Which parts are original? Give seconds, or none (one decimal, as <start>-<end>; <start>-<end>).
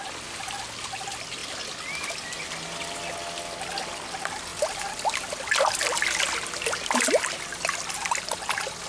0.0-8.9